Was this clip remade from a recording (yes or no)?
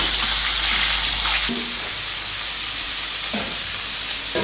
no